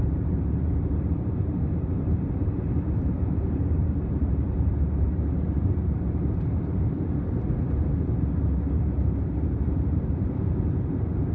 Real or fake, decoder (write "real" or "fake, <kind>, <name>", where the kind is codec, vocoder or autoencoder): fake, vocoder, BigVGAN v2